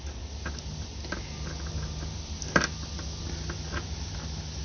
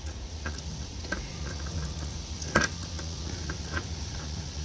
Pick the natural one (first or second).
first